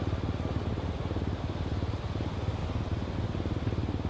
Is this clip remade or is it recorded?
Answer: recorded